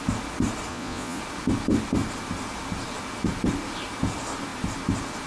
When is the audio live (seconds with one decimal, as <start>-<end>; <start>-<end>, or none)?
0.0-0.7; 1.2-5.3